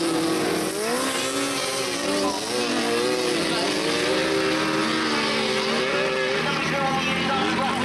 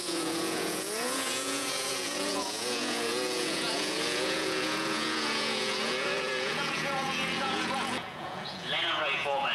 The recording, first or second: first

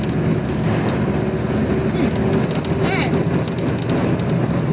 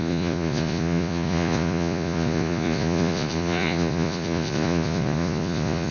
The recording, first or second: first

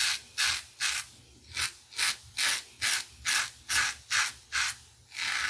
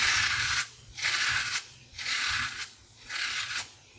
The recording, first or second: first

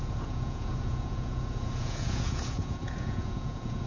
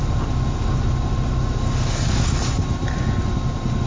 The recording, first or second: second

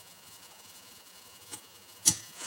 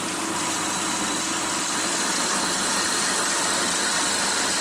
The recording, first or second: second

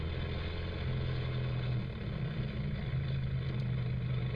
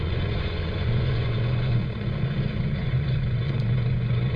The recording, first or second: first